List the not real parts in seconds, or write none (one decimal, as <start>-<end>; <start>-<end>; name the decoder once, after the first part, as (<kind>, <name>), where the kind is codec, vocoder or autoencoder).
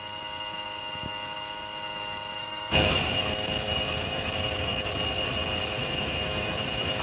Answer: 2.4-4.9 (autoencoder, DAC-VAE); 5.8-7.0